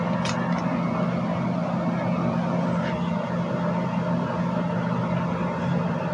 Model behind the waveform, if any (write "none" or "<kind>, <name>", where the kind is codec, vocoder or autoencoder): none